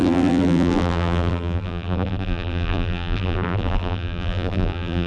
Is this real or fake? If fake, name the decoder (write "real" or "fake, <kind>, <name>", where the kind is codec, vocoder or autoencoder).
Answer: fake, vocoder, BigVGAN v2